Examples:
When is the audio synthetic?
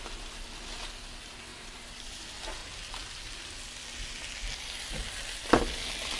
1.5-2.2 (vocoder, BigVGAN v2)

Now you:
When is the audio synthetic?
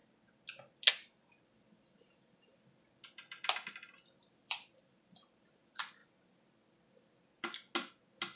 0.9-2.5 (vocoder, BigVGAN v2); 4.4-6.0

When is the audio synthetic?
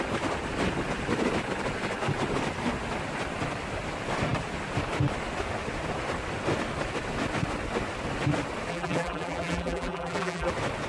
8.7-10.5 (vocoder, BigVGAN v2)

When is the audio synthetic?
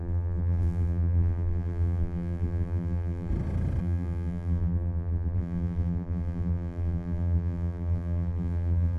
0.0-3.3 (vocoder, BigVGAN v2); 3.8-9.0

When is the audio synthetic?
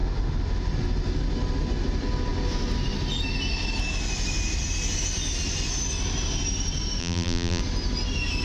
7.0-7.6 (vocoder, BigVGAN v2)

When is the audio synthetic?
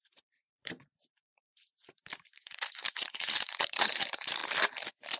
0.0-4.4 (vocoder, BigVGAN v2)